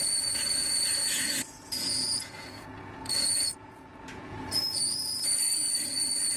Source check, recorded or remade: remade